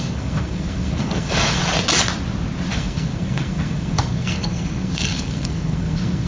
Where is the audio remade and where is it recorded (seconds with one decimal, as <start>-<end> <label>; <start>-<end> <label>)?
0.0-1.6 remade; 1.6-2.7 recorded; 2.7-6.3 remade

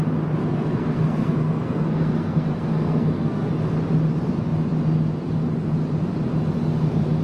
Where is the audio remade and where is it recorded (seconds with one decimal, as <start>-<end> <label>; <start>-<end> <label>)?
0.0-0.4 recorded; 0.4-3.5 remade; 3.5-7.2 recorded

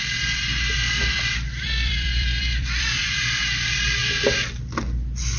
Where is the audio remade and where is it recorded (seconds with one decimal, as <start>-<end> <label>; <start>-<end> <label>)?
0.0-1.0 recorded; 1.0-3.0 remade; 3.0-5.4 recorded